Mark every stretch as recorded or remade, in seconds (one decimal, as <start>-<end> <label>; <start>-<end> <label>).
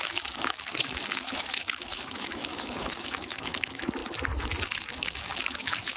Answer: 0.0-4.0 remade; 4.0-4.8 recorded; 4.8-6.0 remade